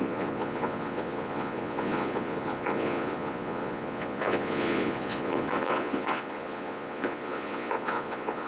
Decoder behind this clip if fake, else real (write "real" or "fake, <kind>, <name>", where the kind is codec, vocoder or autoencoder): fake, vocoder, Vocos